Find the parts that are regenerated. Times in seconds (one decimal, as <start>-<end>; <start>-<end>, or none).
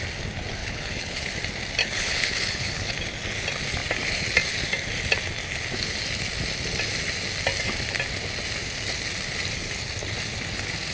0.6-1.3; 1.8-2.9